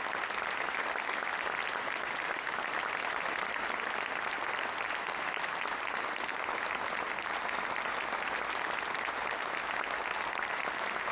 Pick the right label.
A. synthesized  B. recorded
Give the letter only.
B